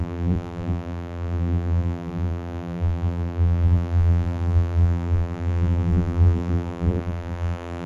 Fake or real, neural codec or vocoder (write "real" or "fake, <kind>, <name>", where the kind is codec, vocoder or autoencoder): fake, vocoder, BigVGAN v2